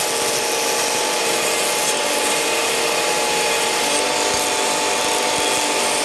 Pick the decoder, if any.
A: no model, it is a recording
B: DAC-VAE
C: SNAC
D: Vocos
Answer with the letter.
A